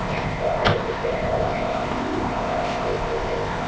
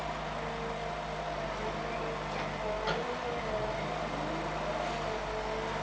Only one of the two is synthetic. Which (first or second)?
first